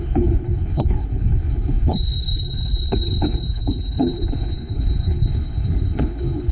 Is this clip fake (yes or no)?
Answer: yes